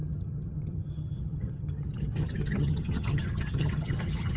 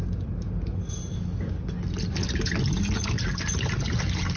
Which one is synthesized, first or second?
first